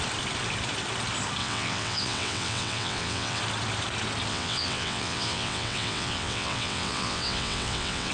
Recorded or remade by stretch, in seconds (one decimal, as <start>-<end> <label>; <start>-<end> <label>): 0.0-1.4 recorded; 1.4-3.4 remade; 3.4-4.3 recorded; 4.3-8.1 remade